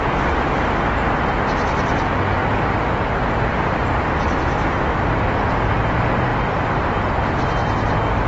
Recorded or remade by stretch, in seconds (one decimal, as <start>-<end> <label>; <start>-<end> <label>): 0.0-2.4 recorded; 2.4-3.3 remade; 3.3-6.3 recorded; 6.3-6.9 remade; 6.9-8.3 recorded